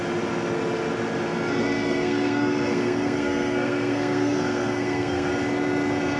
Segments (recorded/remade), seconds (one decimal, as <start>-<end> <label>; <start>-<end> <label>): 0.0-1.6 recorded; 1.6-5.3 remade; 5.3-6.2 recorded